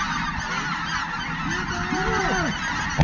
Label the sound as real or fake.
real